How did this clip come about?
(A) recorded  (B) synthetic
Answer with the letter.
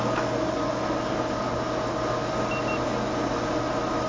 A